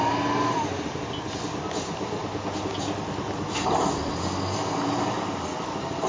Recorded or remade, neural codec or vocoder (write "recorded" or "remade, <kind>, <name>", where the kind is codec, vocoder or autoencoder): recorded